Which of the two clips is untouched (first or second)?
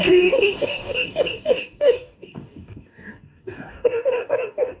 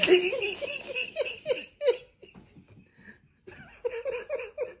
second